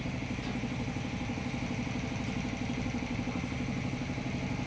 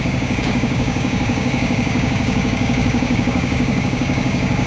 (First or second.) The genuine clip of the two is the first